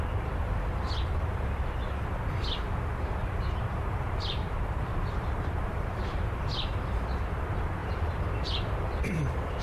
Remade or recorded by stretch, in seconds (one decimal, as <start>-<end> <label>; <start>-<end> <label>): 0.0-3.2 recorded; 3.2-6.0 remade; 6.0-7.8 recorded; 7.8-9.1 remade; 9.1-9.6 recorded